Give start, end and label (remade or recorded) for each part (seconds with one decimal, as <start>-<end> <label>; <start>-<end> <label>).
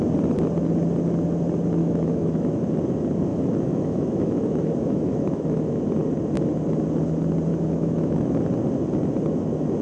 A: 0.0-1.8 recorded; 1.8-2.6 remade; 2.6-3.3 recorded; 3.3-5.8 remade; 5.8-7.5 recorded; 7.5-8.3 remade; 8.3-9.8 recorded